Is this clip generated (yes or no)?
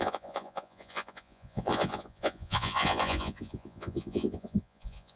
yes